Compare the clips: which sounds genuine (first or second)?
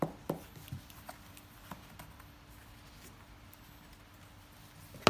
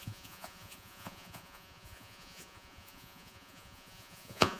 first